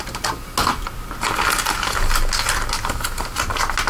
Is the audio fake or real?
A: real